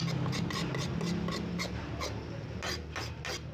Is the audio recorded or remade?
recorded